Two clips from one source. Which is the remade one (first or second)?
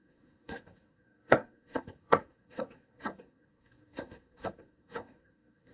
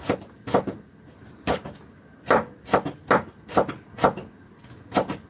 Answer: first